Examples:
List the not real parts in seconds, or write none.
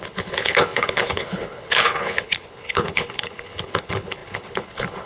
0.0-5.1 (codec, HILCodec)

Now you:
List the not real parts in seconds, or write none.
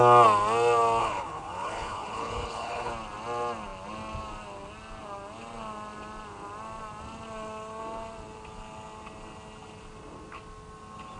1.0-2.9 (codec, HILCodec)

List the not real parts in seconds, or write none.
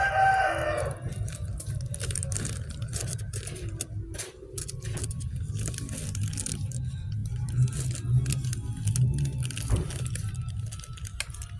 none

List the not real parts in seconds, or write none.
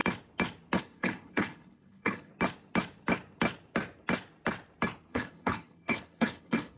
0.8-2.3 (codec, HILCodec); 5.1-6.8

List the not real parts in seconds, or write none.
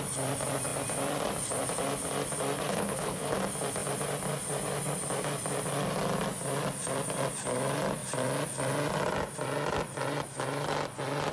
2.7-3.4 (codec, HILCodec)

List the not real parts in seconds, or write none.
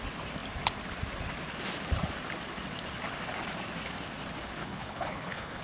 4.6-5.6 (codec, HILCodec)